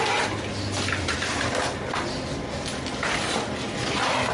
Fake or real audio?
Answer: real